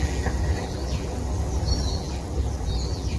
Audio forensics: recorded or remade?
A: remade